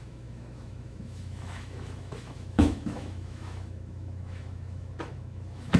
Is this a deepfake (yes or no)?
yes